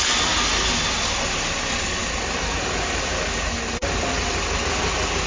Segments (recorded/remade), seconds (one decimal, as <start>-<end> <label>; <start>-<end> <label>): 0.0-5.3 recorded